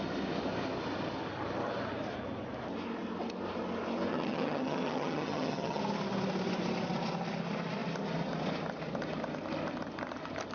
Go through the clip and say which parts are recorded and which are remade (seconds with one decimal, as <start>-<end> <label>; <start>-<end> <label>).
0.0-4.1 recorded; 4.1-5.8 remade; 5.8-10.5 recorded